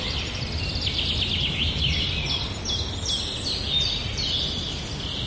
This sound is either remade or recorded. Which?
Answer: recorded